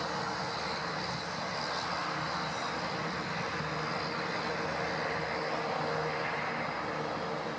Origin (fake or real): real